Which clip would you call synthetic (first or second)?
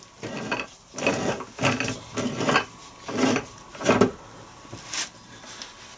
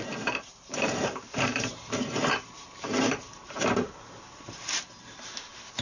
second